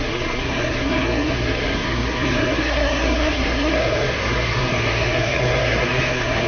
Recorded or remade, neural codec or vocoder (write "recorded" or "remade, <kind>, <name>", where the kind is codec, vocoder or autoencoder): remade, codec, SNAC